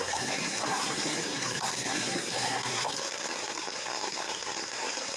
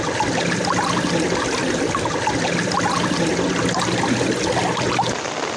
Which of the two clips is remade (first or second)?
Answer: first